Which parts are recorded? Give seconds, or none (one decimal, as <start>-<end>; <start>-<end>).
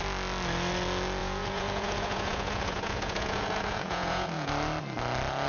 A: 0.0-1.2; 4.5-5.5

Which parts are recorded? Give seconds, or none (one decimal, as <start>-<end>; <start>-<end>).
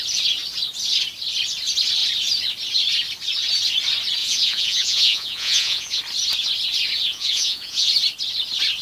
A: 0.0-4.2; 6.0-7.1; 7.9-8.8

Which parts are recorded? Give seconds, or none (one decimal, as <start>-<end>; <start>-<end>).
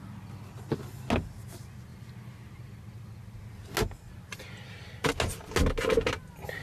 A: 0.0-6.6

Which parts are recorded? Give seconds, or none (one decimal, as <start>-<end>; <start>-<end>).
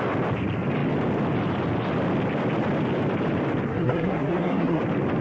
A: 0.0-3.7; 4.8-5.2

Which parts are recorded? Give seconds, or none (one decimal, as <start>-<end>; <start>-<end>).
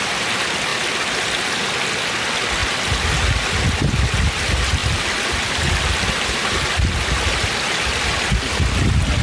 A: 0.0-4.8; 5.5-9.2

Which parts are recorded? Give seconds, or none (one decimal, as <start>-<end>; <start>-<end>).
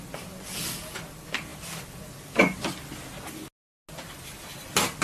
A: 0.0-5.0